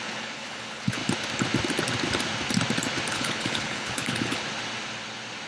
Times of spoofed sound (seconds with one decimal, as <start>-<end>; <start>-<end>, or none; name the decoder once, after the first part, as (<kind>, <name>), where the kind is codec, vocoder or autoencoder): 0.0-1.0 (codec, HILCodec); 3.1-4.4